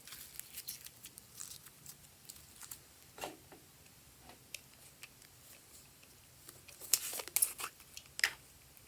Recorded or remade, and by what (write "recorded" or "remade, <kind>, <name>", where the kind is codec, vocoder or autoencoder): recorded